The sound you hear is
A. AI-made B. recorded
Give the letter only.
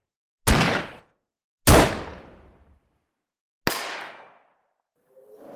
B